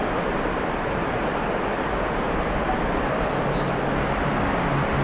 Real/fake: real